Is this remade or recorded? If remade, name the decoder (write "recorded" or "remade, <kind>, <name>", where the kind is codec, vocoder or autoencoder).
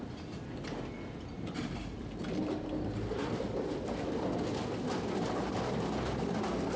recorded